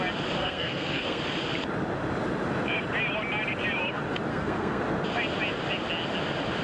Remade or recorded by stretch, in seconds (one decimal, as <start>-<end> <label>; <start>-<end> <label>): 0.0-0.4 recorded; 0.4-1.2 remade; 1.2-4.3 recorded; 4.3-4.8 remade; 4.8-6.6 recorded